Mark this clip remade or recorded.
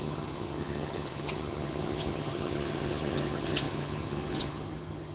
remade